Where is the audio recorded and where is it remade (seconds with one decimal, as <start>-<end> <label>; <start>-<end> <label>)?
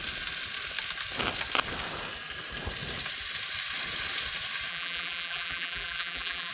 0.0-4.7 recorded; 4.7-6.5 remade